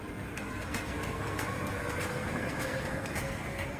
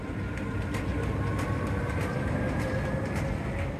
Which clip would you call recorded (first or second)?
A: second